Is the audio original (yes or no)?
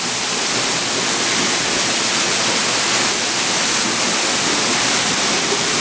yes